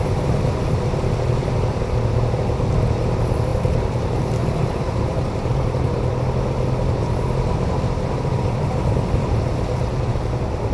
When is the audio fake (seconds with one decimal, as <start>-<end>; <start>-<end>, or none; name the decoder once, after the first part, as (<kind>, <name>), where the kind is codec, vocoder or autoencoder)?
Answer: 3.5-6.0 (vocoder, BigVGAN v2)